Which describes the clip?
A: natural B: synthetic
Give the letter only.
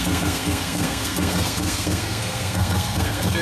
B